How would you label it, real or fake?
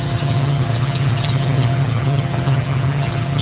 fake